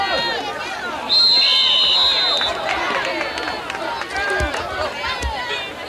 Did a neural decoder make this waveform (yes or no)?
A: no